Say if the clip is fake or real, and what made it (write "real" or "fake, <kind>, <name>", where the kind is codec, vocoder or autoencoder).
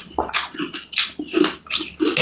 real